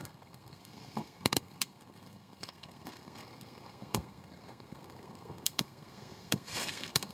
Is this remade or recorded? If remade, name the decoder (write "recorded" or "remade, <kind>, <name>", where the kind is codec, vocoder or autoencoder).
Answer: remade, codec, SNAC